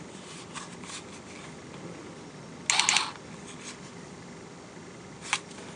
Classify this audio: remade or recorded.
recorded